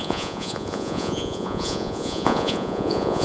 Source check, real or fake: fake